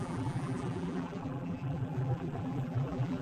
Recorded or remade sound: remade